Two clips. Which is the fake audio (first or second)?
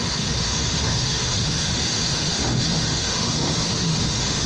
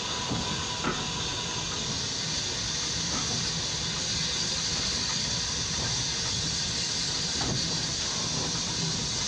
first